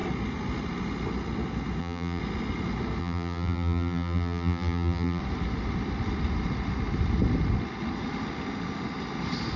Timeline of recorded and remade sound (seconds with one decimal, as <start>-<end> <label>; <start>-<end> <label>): 0.0-1.8 recorded; 1.8-2.2 remade; 2.2-3.0 recorded; 3.0-5.2 remade; 5.2-9.6 recorded